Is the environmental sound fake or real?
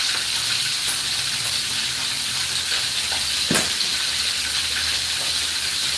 real